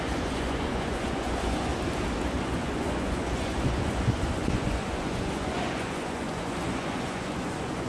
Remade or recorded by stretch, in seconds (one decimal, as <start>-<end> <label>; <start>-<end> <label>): 0.0-1.7 remade; 1.7-2.3 recorded; 2.3-7.9 remade

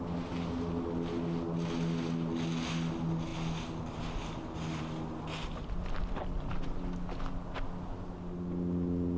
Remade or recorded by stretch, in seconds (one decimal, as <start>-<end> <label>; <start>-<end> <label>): 0.0-9.2 recorded

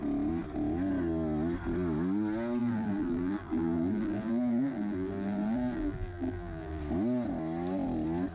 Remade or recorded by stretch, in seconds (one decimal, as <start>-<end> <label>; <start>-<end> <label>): 0.0-2.6 recorded; 2.6-6.8 remade; 6.8-8.3 recorded

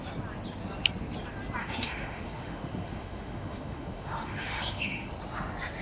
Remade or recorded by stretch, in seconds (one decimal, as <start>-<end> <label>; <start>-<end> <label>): 0.0-1.6 recorded; 1.6-5.1 remade; 5.1-5.8 recorded

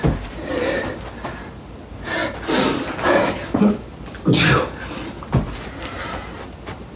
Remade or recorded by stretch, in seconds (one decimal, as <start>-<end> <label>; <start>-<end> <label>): 0.0-7.0 recorded